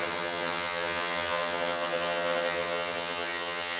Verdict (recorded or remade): remade